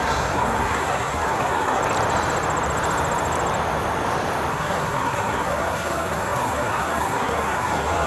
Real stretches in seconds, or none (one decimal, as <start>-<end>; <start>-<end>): 1.8-4.5